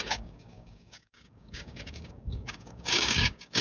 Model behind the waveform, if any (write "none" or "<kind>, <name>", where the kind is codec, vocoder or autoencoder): codec, DAC